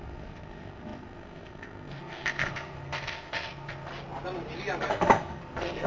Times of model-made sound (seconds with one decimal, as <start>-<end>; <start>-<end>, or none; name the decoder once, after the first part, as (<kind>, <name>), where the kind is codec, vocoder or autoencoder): 0.0-3.9 (codec, SNAC); 4.9-5.9